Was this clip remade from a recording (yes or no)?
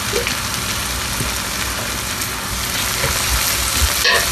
no